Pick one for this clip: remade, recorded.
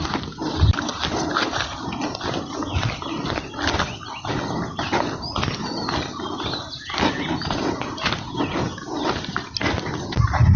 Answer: recorded